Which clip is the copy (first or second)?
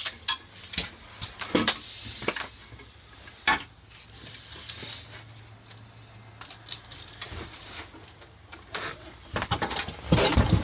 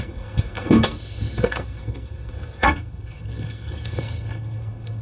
second